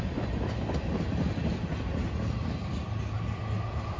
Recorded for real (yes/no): yes